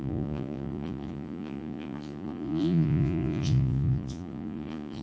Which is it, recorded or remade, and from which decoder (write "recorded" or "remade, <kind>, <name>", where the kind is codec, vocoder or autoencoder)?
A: remade, vocoder, Vocos